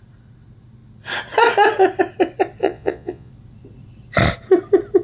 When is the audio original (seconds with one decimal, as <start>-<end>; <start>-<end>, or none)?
0.0-2.6; 3.3-5.0